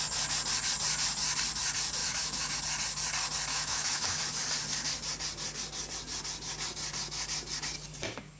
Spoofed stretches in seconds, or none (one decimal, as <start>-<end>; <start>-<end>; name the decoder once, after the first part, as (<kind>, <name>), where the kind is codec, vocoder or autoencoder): 2.0-2.6 (autoencoder, DAC-VAE); 3.5-4.2